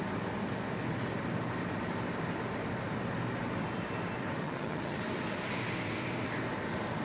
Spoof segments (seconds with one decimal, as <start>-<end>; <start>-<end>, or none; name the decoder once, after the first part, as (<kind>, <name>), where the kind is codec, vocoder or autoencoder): 4.4-5.0 (vocoder, HiFi-GAN)